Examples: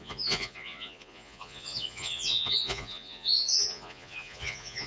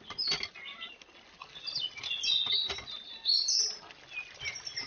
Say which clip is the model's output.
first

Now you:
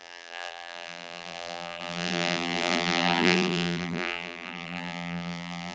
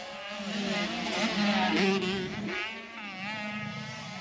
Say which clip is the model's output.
first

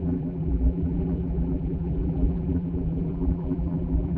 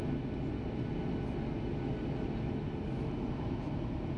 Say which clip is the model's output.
first